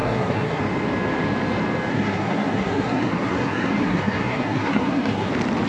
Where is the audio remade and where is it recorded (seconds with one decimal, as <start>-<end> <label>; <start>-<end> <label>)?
0.0-0.6 remade; 0.6-1.9 recorded; 1.9-5.3 remade; 5.3-5.7 recorded